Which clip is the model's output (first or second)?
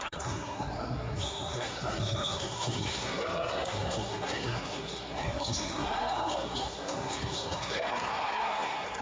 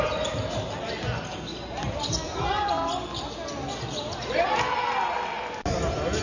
first